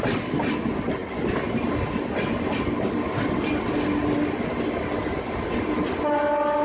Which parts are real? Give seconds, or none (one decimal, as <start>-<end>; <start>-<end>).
0.0-6.6